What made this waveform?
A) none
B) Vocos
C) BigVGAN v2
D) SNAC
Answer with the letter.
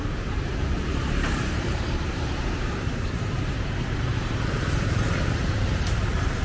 C